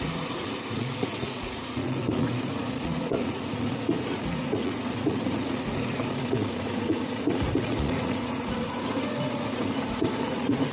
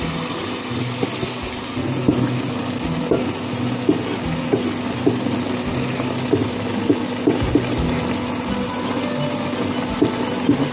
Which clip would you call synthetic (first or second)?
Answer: first